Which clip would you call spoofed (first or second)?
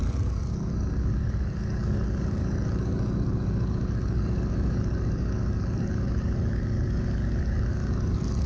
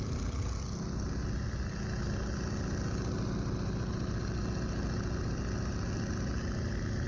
first